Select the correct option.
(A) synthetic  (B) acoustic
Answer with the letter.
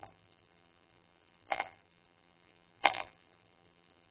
A